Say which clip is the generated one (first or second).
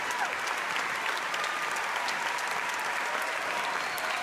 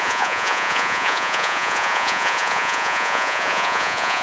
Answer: second